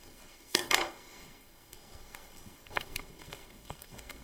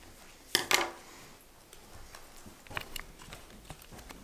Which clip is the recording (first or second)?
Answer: second